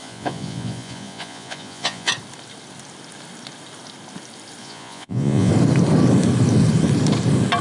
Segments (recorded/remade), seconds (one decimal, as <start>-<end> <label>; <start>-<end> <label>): 0.0-2.1 remade; 2.1-4.6 recorded; 4.6-5.5 remade; 5.5-7.6 recorded